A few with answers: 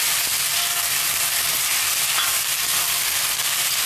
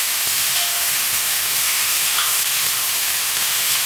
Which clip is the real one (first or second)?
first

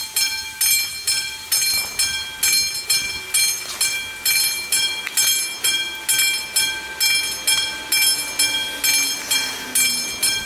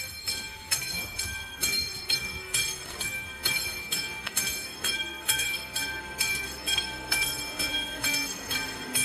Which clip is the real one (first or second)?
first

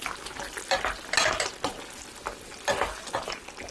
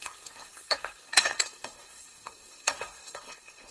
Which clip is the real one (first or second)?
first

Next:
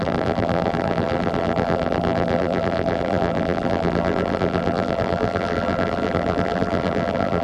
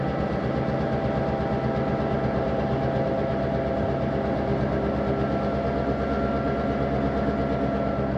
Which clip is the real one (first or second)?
second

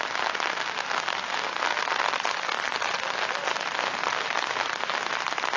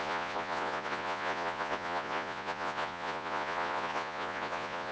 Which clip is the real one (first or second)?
first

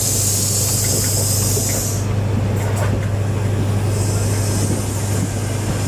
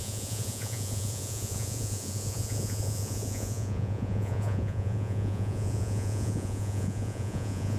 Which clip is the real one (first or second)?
first